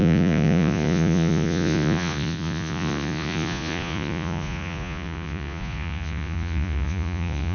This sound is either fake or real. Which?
fake